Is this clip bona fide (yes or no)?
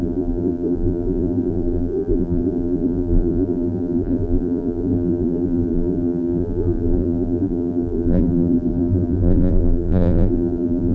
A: no